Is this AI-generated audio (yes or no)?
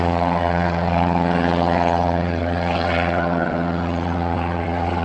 yes